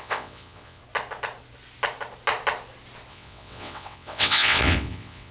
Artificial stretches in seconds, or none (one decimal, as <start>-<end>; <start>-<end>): 0.0-0.8; 3.1-5.3